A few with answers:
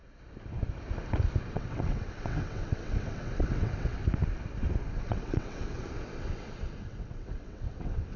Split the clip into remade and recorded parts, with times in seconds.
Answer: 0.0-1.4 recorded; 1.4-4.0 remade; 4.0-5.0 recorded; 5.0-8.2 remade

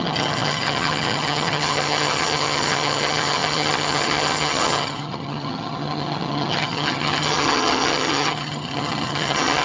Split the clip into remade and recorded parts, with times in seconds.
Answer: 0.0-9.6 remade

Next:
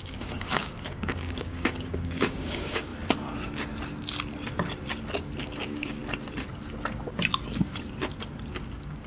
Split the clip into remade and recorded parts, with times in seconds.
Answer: 0.0-2.9 remade; 2.9-5.4 recorded; 5.4-6.0 remade; 6.0-8.5 recorded; 8.5-9.1 remade

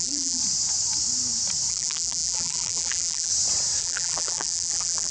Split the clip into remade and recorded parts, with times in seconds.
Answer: 0.0-0.4 remade; 0.4-1.7 recorded; 1.7-3.3 remade; 3.3-3.8 recorded; 3.8-5.1 remade

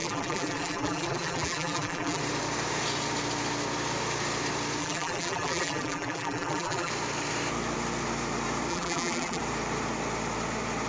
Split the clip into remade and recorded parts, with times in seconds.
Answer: 0.0-2.2 remade; 2.2-4.8 recorded; 4.8-6.9 remade; 6.9-8.7 recorded; 8.7-9.4 remade; 9.4-10.9 recorded